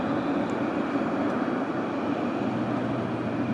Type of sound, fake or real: real